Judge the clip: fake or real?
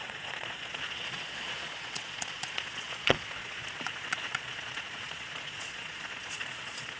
fake